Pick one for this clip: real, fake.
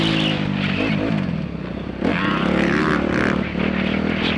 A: real